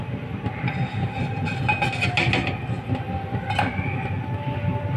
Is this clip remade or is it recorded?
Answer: recorded